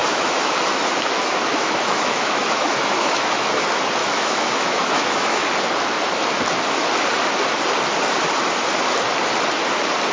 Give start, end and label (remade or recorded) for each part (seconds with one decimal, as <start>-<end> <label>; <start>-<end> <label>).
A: 0.0-3.5 remade; 3.5-4.0 recorded; 4.0-5.4 remade; 5.4-10.1 recorded